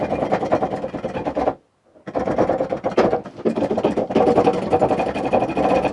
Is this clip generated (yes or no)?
no